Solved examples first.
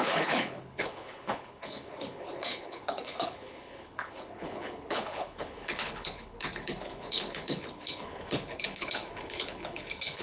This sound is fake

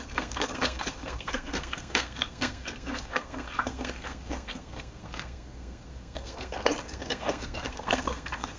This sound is fake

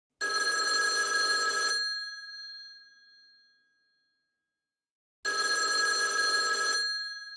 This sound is real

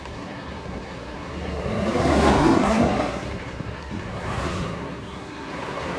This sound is fake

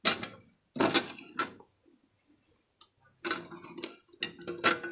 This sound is real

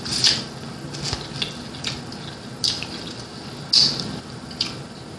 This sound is real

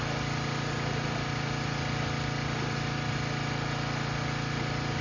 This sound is real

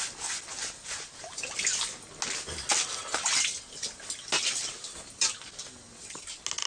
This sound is real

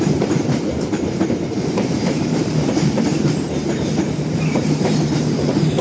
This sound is fake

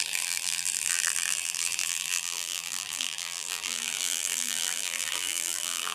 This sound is fake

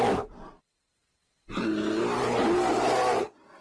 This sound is real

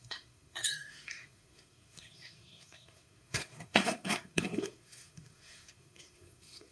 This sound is fake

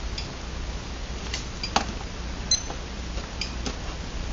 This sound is real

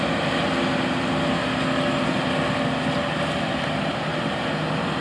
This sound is real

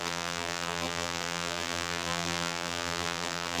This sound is fake